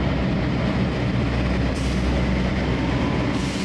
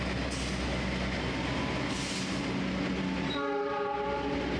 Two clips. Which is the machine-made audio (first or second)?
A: first